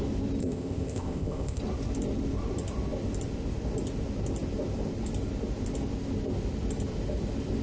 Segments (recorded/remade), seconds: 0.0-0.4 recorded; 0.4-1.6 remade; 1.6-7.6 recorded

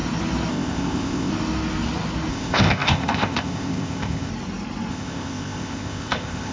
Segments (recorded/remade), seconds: 0.0-0.5 recorded; 0.5-1.3 remade; 1.3-2.3 recorded; 2.3-4.3 remade; 4.3-4.9 recorded; 4.9-6.5 remade

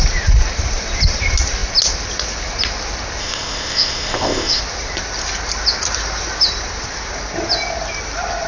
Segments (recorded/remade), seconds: 0.0-3.2 recorded; 3.2-4.6 remade; 4.6-8.5 recorded

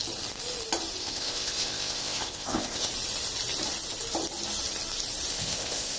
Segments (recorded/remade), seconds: 0.0-1.0 recorded; 1.0-2.9 remade; 2.9-5.3 recorded; 5.3-6.0 remade

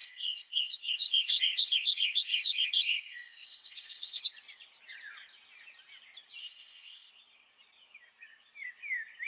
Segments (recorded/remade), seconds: 0.0-4.2 remade; 4.2-6.4 recorded; 6.4-7.1 remade; 7.1-9.3 recorded

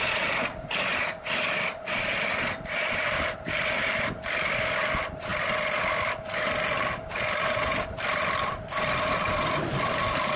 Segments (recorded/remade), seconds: 0.0-10.4 recorded

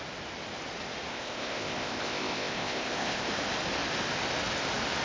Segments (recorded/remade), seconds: 0.0-1.1 recorded; 1.1-3.3 remade; 3.3-5.0 recorded